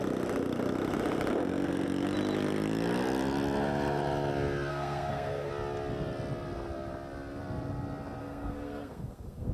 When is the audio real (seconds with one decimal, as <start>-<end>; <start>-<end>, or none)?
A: 0.0-4.7; 5.5-8.2